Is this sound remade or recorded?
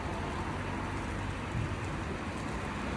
recorded